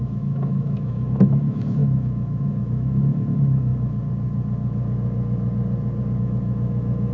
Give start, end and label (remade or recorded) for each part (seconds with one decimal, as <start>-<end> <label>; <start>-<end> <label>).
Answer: 0.0-3.7 remade; 3.7-6.2 recorded; 6.2-7.1 remade